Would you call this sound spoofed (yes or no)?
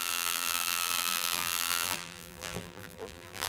yes